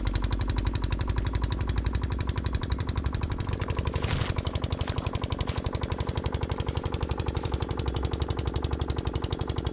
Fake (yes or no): no